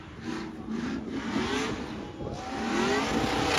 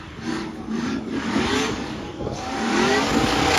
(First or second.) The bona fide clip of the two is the first